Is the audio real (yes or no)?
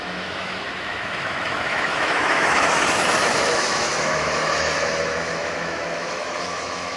no